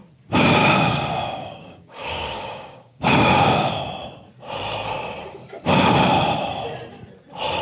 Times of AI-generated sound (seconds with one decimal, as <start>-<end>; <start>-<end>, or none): 0.6-3.7